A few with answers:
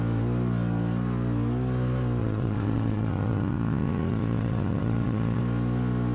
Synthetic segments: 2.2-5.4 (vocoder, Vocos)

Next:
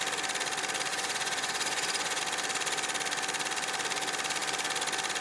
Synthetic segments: 0.9-2.2 (vocoder, Vocos)

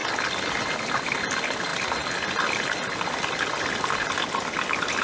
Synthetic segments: none

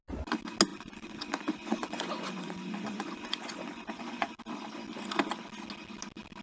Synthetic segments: 0.7-4.4 (vocoder, Vocos)